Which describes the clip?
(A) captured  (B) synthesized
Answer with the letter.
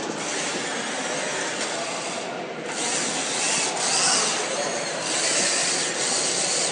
A